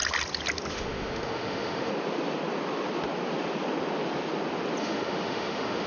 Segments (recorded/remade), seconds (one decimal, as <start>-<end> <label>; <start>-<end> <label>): 0.0-0.7 recorded; 0.7-1.9 remade; 1.9-4.8 recorded; 4.8-5.9 remade

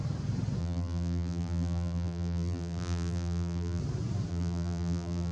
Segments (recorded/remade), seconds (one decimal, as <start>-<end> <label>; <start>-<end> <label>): 0.0-0.6 recorded; 0.6-3.8 remade; 3.8-4.3 recorded; 4.3-5.3 remade

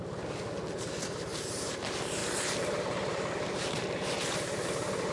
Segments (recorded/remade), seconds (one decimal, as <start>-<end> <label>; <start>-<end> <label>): 0.0-1.3 recorded; 1.3-1.8 remade; 1.8-2.2 recorded; 2.2-3.5 remade; 3.5-5.1 recorded

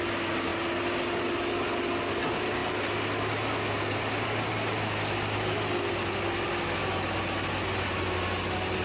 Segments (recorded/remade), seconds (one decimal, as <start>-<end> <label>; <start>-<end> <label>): 0.0-8.8 recorded

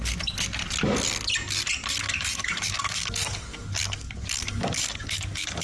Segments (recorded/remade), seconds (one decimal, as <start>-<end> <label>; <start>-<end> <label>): 0.0-2.0 recorded; 2.0-5.6 remade